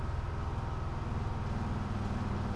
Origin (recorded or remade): recorded